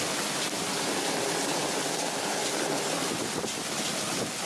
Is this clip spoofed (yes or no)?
no